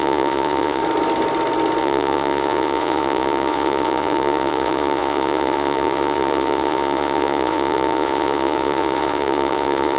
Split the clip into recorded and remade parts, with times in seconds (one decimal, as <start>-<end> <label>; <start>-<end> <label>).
0.0-0.8 remade; 0.8-1.8 recorded; 1.8-10.0 remade